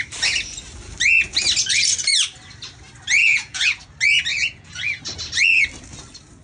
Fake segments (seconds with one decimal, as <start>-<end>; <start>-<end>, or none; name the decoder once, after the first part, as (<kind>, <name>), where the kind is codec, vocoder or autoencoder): 3.2-3.8 (vocoder, Vocos); 4.3-5.0